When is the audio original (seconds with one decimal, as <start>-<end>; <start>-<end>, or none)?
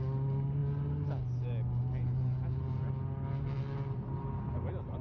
0.0-5.0